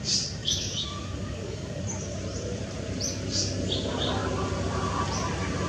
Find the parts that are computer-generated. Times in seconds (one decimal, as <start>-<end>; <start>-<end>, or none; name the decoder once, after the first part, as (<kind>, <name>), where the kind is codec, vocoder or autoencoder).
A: 0.4-1.8 (codec, DAC)